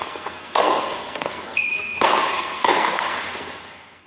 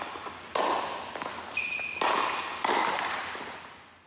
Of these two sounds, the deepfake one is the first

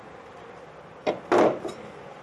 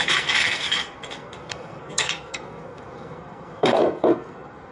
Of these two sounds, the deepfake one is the second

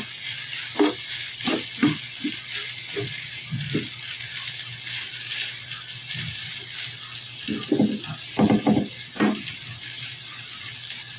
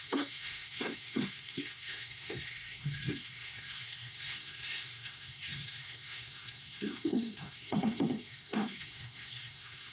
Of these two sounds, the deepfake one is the second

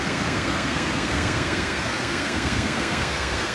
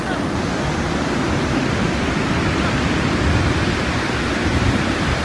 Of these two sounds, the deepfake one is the first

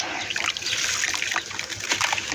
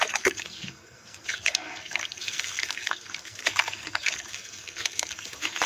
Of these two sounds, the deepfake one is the second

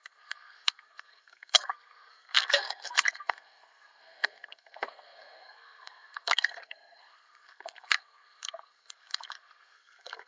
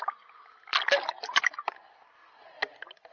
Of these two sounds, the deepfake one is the first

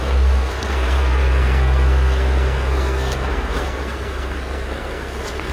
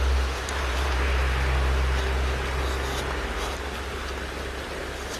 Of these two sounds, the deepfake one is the first